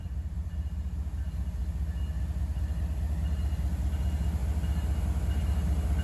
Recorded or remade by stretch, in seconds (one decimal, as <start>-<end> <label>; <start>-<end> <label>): 0.0-0.6 remade; 0.6-6.0 recorded